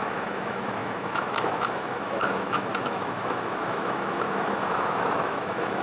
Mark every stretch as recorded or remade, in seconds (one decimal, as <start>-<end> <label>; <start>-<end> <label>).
0.0-5.8 remade